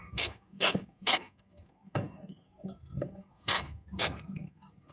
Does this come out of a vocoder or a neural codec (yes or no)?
yes